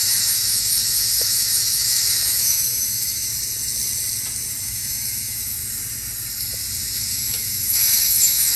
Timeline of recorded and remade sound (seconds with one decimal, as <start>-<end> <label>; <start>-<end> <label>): 0.0-3.3 remade; 3.3-4.6 recorded; 4.6-5.6 remade; 5.6-6.8 recorded; 6.8-8.6 remade